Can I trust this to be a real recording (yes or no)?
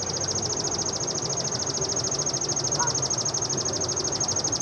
yes